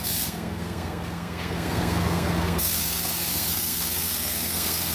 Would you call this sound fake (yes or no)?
yes